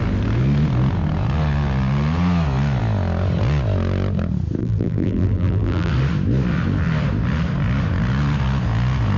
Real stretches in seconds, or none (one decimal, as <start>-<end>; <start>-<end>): 0.0-4.6; 5.9-9.2